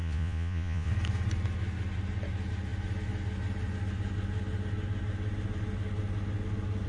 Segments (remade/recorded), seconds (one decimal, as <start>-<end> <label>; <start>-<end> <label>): 0.0-0.9 remade; 0.9-6.9 recorded